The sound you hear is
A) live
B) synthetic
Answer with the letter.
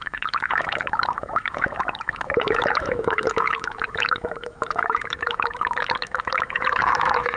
B